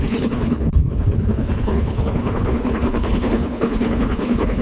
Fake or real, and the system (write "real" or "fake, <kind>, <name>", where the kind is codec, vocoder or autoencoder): fake, codec, HILCodec